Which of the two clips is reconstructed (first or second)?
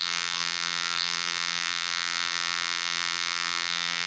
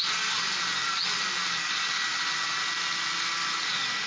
first